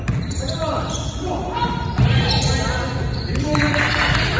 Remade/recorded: recorded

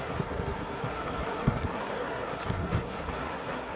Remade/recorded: remade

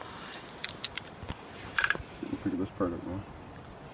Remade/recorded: remade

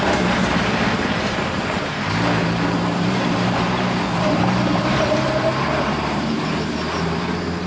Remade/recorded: remade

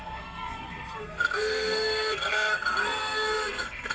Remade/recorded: remade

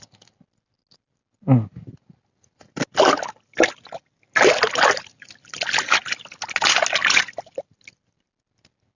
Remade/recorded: recorded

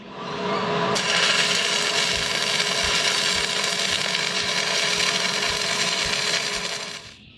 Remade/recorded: recorded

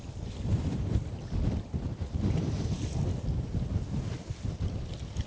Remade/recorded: recorded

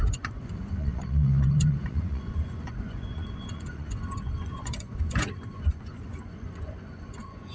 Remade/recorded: remade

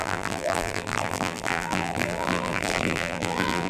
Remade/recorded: remade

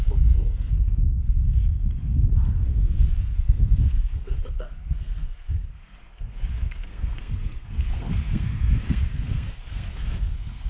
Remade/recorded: remade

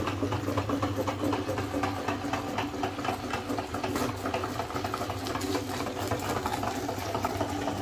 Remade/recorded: recorded